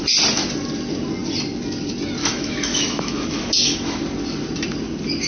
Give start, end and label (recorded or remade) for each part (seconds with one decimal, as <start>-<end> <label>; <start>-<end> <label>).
0.0-2.2 recorded; 2.2-4.0 remade; 4.0-5.3 recorded